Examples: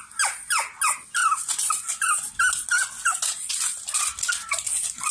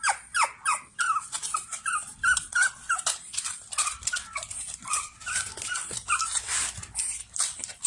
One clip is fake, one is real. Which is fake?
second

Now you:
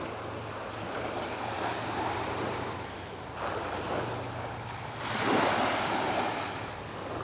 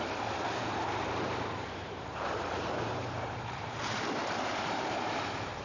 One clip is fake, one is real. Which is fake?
second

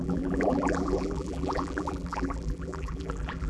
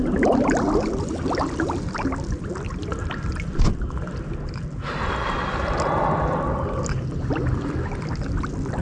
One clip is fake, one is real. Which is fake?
first